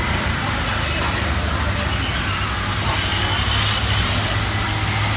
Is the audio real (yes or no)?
yes